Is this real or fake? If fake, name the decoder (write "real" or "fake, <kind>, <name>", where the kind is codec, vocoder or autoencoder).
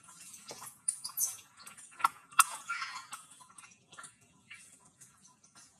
fake, vocoder, Vocos